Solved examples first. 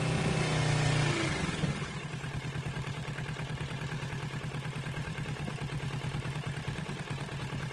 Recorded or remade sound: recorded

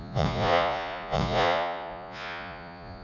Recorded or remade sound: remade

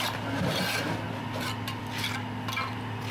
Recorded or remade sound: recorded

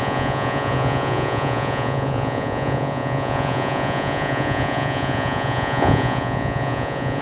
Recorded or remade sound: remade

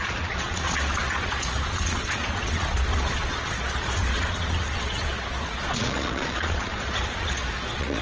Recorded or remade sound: remade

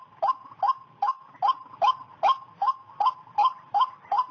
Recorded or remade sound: recorded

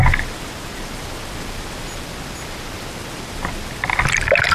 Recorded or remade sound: recorded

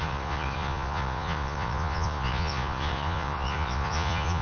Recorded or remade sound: remade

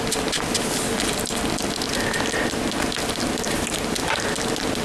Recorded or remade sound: recorded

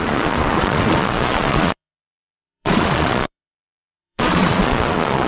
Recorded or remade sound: remade